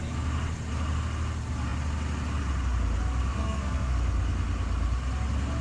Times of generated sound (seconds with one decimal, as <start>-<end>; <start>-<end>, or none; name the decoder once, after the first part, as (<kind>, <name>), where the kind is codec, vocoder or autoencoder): 3.3-3.9 (codec, SNAC)